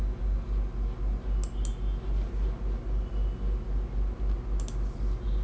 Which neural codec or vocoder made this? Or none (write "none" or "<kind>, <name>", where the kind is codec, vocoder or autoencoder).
none